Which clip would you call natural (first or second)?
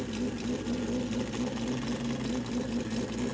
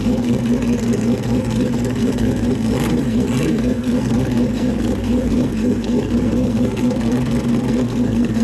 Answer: first